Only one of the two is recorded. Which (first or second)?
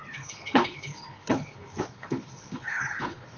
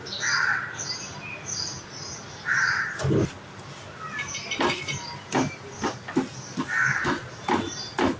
second